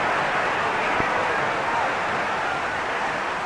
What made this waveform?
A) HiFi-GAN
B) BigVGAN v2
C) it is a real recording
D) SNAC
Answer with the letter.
C